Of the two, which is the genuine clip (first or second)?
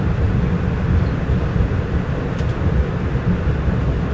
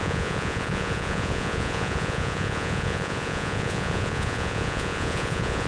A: first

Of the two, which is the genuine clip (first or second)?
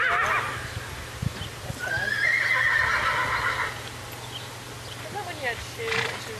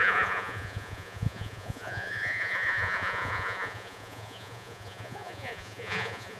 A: first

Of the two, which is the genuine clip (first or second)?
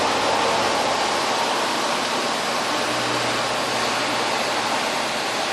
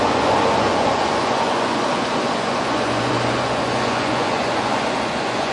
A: first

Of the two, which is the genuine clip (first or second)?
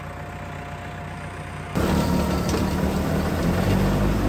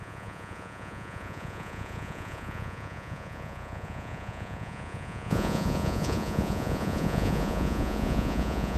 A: first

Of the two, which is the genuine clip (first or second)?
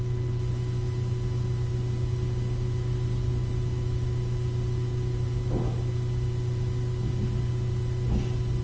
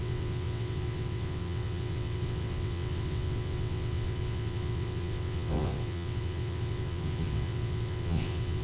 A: first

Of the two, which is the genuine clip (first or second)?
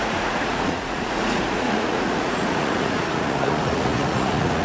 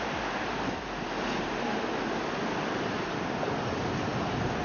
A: second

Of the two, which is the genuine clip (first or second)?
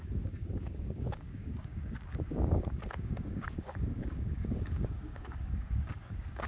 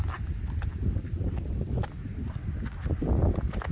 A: second